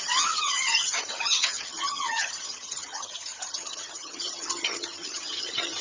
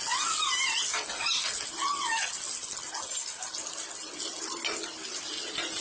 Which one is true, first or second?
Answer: second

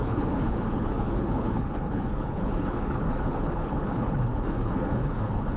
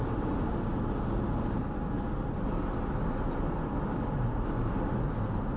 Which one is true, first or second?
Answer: second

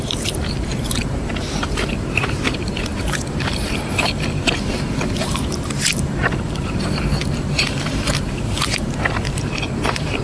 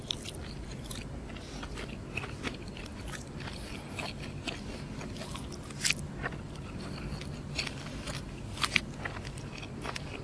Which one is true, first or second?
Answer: second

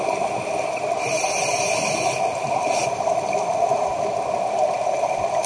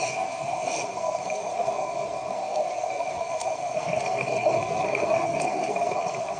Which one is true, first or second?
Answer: first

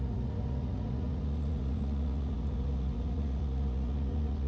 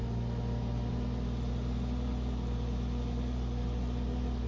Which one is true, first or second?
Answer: second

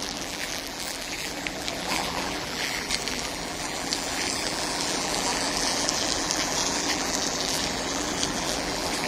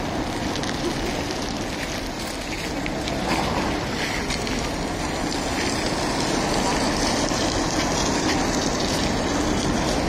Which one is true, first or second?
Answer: second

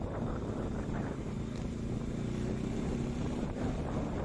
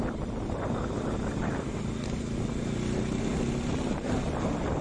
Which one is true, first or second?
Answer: first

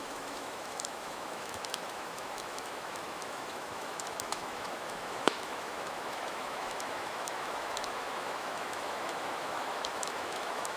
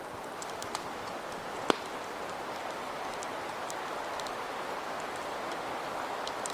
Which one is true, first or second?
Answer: second